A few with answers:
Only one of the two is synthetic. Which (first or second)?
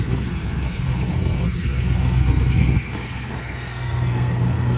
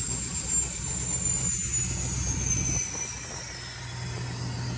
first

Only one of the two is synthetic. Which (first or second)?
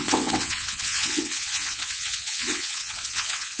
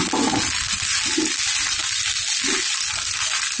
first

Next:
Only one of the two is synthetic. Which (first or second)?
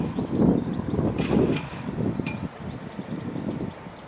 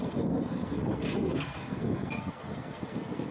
second